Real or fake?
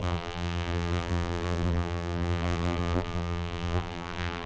fake